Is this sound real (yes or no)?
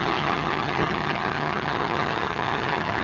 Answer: no